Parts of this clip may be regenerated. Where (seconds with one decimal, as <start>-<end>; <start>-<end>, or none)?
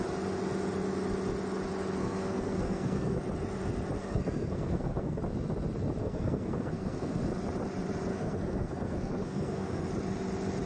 2.0-3.2; 4.0-5.2; 6.0-7.2; 8.1-9.9